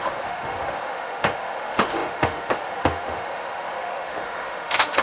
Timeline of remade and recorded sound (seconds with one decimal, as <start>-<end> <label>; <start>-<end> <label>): 0.0-5.0 remade